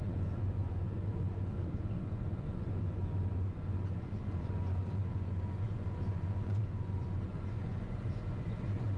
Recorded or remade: remade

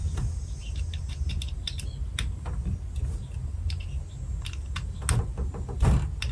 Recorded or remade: recorded